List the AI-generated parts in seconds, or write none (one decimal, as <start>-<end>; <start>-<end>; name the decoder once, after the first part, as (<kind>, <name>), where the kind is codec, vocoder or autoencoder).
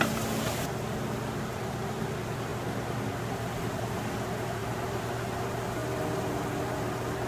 2.5-3.0 (vocoder, BigVGAN v2); 4.6-5.1